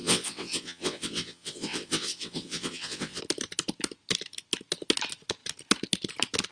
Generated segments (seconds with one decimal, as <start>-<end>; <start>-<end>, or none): 0.0-3.2